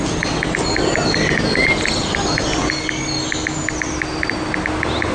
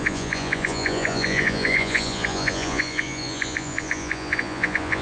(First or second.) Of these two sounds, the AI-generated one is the second